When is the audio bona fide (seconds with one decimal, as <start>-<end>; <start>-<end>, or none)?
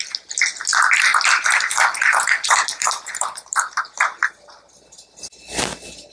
0.0-1.1; 4.7-6.1